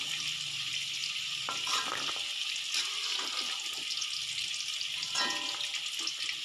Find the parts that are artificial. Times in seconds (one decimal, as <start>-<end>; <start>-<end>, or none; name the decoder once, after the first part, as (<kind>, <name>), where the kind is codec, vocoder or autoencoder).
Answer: none